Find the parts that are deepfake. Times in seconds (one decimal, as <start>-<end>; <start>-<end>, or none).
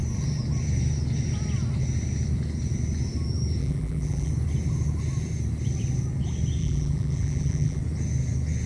3.6-4.3; 6.6-7.8